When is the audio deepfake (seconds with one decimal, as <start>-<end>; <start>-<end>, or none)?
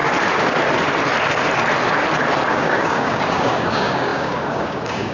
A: 2.5-5.1